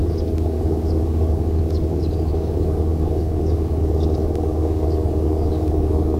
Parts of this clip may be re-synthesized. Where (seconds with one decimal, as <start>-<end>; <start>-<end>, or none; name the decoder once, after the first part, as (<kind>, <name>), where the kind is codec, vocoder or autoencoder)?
0.0-6.2 (codec, DAC)